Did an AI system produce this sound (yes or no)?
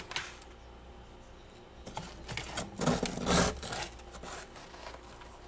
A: no